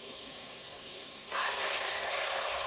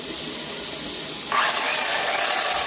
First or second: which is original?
second